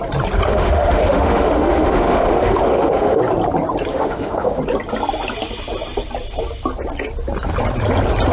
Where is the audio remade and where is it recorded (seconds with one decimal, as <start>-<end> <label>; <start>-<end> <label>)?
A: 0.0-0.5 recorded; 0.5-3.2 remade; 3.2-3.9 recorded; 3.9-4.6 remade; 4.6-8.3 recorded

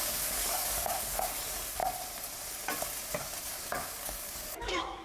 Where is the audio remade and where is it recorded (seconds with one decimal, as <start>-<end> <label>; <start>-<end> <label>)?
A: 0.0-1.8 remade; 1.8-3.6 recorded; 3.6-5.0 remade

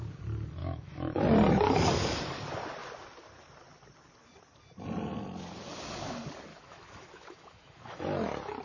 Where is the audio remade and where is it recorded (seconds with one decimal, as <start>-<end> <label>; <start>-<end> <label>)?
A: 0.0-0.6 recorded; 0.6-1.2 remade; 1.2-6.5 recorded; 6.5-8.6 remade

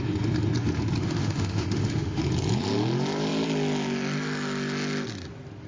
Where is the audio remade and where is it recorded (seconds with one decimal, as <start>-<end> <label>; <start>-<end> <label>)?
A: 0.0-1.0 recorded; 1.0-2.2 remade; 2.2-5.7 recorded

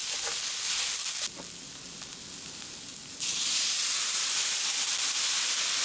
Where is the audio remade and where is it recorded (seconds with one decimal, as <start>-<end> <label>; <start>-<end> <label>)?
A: 0.0-5.8 recorded

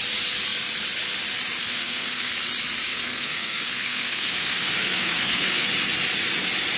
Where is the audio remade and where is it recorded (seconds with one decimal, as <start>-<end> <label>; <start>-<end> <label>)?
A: 0.0-1.6 recorded; 1.6-2.3 remade; 2.3-2.9 recorded; 2.9-5.7 remade; 5.7-6.8 recorded

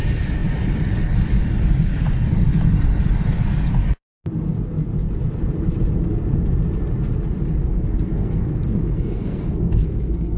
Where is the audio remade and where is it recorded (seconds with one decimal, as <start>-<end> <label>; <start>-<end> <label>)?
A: 0.0-7.6 recorded; 7.6-10.4 remade

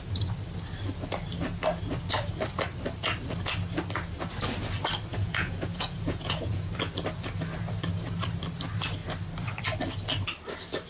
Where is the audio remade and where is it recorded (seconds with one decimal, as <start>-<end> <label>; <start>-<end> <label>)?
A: 0.0-5.1 recorded; 5.1-6.7 remade; 6.7-10.9 recorded